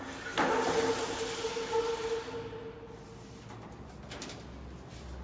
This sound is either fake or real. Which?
real